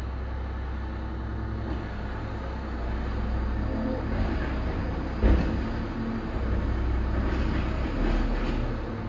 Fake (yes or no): no